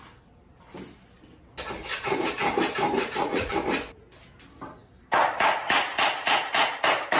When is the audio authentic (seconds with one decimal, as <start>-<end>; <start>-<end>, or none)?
0.0-3.0; 3.5-7.2